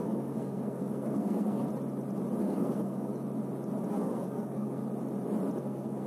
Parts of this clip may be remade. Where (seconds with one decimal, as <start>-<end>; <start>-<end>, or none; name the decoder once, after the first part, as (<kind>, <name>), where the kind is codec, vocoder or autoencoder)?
0.0-1.7 (codec, SNAC); 2.4-3.1; 3.9-4.8; 5.6-6.1